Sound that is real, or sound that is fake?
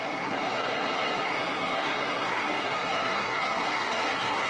fake